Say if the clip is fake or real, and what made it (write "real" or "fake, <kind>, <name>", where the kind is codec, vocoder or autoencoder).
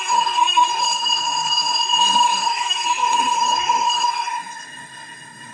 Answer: fake, codec, SNAC